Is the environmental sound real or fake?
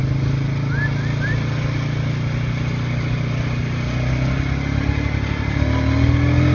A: real